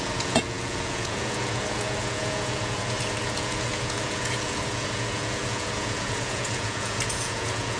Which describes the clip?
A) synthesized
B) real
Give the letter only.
A